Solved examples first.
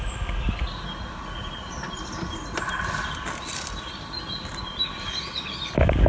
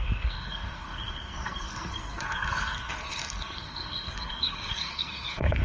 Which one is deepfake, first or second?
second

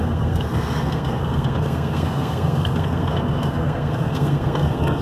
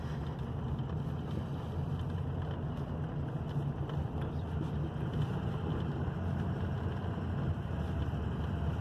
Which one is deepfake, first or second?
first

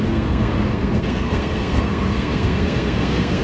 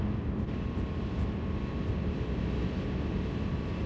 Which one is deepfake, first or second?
first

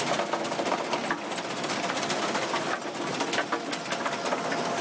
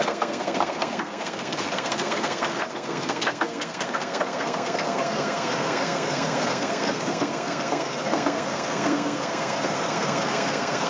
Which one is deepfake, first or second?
second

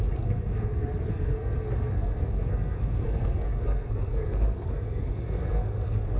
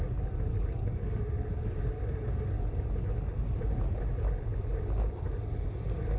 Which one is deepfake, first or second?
first